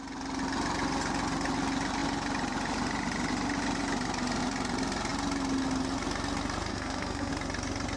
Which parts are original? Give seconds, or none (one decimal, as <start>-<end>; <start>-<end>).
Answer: 0.0-6.7; 7.3-8.0